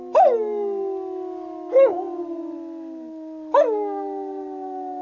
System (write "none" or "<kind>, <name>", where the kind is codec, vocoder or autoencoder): none